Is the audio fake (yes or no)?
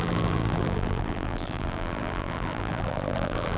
yes